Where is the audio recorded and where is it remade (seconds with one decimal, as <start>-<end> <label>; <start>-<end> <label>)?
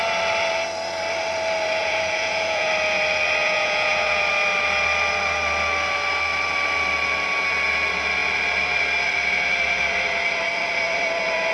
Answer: 0.0-1.8 recorded; 1.8-2.7 remade; 2.7-3.4 recorded; 3.4-4.2 remade; 4.2-11.5 recorded